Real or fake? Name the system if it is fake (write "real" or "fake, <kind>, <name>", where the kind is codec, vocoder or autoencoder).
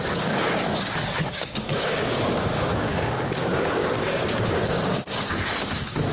fake, codec, DAC